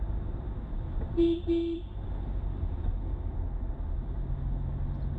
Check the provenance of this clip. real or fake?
real